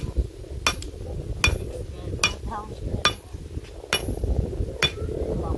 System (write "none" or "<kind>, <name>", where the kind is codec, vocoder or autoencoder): none